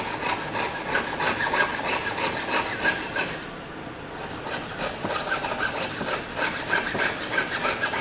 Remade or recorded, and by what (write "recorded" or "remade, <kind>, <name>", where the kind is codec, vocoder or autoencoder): recorded